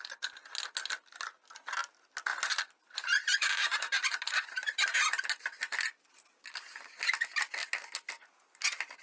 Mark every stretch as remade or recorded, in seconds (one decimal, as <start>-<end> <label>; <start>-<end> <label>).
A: 0.0-9.0 recorded